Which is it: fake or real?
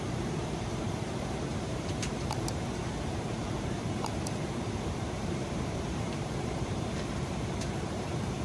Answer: fake